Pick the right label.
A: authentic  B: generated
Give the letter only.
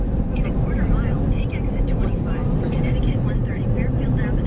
B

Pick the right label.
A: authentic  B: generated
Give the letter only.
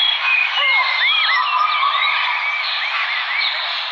A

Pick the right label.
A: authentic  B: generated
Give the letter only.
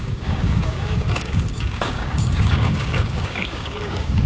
B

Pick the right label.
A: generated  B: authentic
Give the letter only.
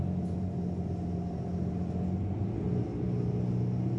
B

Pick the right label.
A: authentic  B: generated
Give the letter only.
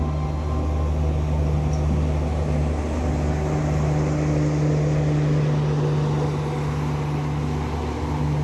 A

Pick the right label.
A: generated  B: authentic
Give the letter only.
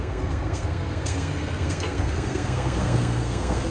A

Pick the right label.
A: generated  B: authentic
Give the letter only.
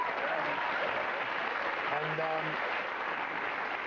B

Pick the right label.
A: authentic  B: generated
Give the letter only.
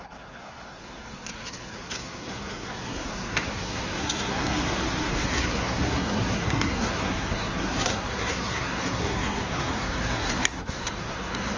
B